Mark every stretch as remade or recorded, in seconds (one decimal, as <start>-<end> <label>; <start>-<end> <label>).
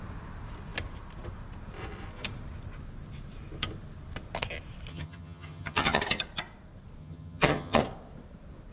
0.0-4.9 recorded; 4.9-6.0 remade; 6.0-7.0 recorded; 7.0-7.8 remade; 7.8-8.7 recorded